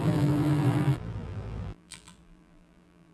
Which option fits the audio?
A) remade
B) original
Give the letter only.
A